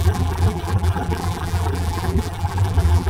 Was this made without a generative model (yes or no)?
no